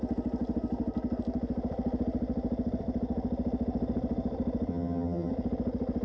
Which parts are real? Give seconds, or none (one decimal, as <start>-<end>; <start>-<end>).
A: 0.0-4.7; 5.3-6.0